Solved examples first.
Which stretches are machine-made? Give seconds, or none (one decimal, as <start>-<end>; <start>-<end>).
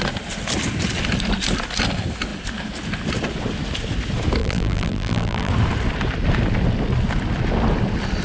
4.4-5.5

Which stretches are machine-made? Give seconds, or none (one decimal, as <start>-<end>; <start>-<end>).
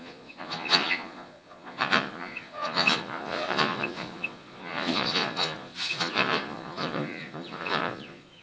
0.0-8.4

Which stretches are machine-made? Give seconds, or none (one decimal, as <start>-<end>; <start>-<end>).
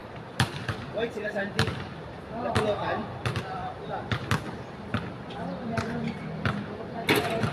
none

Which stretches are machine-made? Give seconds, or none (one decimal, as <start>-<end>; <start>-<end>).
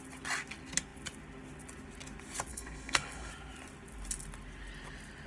2.5-3.3